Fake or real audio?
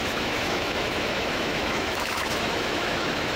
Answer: fake